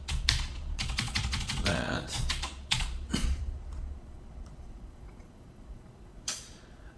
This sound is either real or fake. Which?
fake